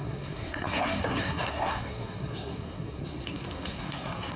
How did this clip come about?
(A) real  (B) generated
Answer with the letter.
B